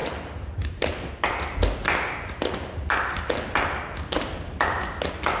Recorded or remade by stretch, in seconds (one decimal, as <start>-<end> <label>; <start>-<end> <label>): 0.0-5.4 recorded